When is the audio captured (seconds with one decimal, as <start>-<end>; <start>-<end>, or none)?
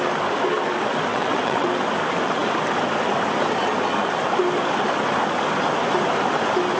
0.0-1.1; 1.7-6.8